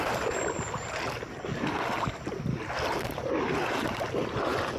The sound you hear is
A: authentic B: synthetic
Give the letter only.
A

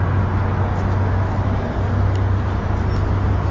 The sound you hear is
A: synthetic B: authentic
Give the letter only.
B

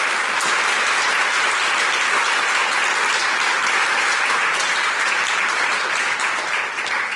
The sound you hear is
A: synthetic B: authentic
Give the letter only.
B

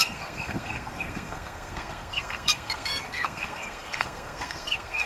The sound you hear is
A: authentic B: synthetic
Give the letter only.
B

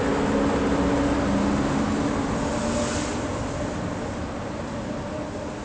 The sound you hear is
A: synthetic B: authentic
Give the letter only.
B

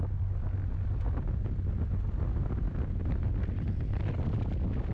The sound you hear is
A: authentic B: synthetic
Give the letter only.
A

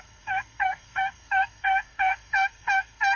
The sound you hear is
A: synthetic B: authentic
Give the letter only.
A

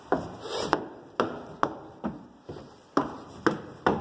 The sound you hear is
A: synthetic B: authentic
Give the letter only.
B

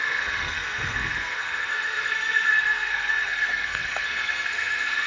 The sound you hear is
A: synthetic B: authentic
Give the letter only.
A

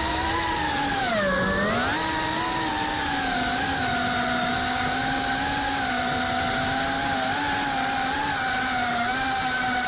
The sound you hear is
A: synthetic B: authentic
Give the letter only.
B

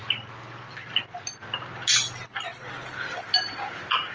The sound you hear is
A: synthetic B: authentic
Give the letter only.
B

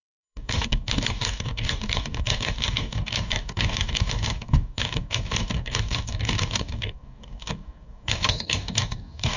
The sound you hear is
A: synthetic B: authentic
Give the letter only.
A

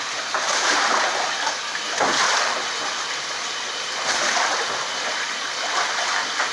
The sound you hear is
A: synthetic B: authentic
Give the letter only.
B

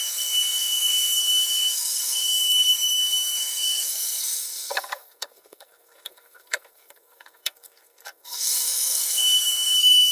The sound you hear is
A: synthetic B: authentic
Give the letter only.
A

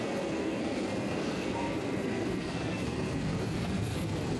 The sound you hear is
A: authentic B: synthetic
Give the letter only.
B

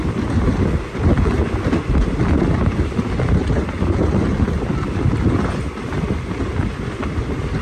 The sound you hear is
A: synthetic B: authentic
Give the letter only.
B